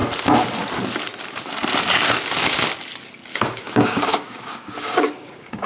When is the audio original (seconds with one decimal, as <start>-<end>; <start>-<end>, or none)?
0.0-3.3